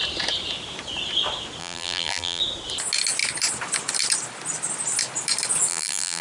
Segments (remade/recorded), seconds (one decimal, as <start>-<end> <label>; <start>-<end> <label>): 0.0-1.6 recorded; 1.6-2.4 remade; 2.4-5.7 recorded; 5.7-6.2 remade